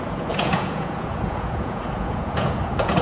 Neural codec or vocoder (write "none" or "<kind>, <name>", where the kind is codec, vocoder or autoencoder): vocoder, Vocos